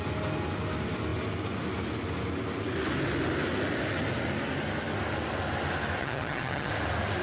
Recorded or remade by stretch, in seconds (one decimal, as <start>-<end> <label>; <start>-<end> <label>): 0.0-6.0 recorded; 6.0-6.7 remade; 6.7-7.2 recorded